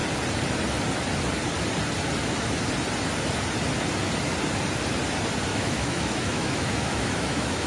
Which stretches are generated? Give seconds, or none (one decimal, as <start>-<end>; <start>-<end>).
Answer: 5.5-7.7